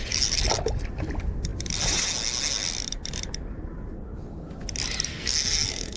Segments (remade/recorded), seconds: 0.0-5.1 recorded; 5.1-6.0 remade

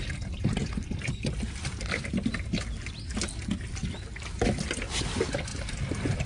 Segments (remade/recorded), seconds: 0.0-5.5 recorded; 5.5-6.3 remade

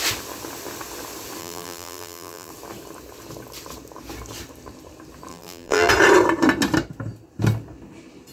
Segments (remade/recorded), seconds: 0.0-1.4 recorded; 1.4-2.5 remade; 2.5-5.3 recorded; 5.3-5.9 remade; 5.9-8.3 recorded

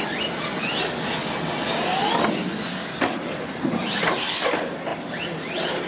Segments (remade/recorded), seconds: 0.0-5.9 recorded

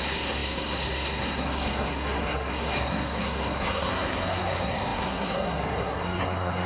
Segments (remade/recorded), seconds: 0.0-6.7 remade

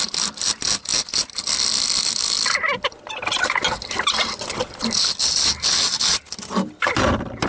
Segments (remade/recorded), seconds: 0.0-7.5 recorded